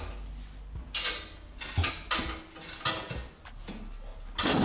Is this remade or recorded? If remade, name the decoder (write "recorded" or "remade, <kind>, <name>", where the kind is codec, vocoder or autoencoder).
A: recorded